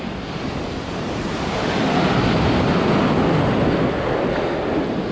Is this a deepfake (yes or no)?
no